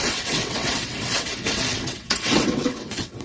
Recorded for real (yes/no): no